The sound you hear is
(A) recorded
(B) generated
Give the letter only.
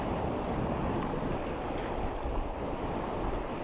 A